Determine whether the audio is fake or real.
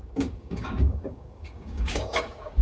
fake